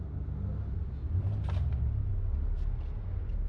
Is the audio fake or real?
real